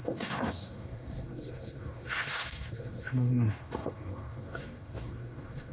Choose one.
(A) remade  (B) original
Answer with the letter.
A